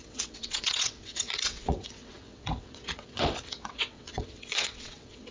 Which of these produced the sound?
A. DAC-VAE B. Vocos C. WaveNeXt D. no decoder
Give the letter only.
C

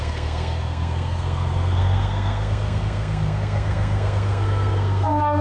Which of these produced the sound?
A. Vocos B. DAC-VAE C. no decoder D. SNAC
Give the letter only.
D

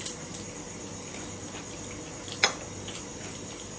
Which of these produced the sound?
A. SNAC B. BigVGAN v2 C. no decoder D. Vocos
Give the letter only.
C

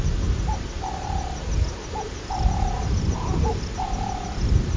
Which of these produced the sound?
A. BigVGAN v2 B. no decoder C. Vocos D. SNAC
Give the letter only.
B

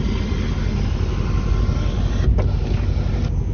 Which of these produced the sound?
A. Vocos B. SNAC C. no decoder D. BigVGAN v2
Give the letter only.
C